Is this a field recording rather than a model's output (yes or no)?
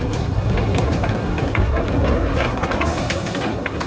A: no